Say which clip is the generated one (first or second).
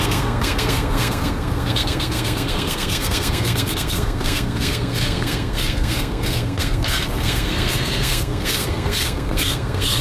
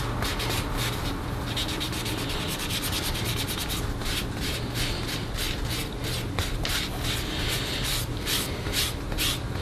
first